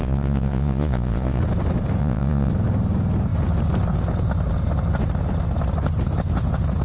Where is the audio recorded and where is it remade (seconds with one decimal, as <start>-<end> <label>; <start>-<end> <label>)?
0.0-1.4 remade; 1.4-2.0 recorded; 2.0-2.5 remade; 2.5-6.8 recorded